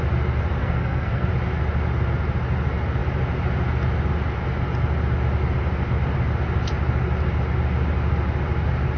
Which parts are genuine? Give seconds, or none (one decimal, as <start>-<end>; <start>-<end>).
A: 0.0-0.6; 1.3-9.0